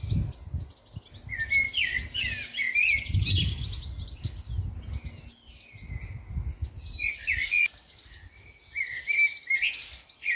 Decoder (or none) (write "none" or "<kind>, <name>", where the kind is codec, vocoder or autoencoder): none